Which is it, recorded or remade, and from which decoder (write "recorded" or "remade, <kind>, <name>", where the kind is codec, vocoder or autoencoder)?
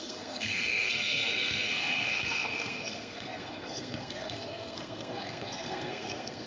remade, codec, SNAC